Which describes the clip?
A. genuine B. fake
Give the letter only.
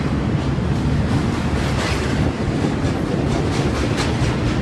A